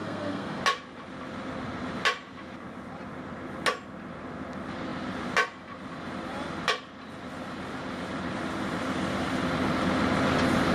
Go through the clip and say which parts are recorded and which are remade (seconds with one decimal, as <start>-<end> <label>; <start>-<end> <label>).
0.0-0.6 remade; 0.6-10.7 recorded